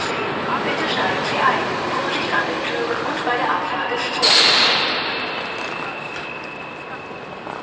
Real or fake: real